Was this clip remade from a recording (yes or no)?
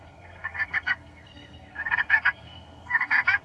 yes